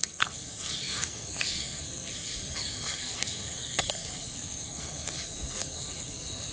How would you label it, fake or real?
fake